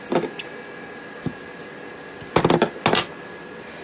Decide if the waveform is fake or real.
real